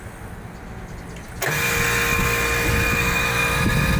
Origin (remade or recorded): recorded